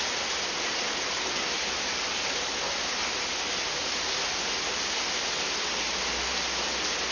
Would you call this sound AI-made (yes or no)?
no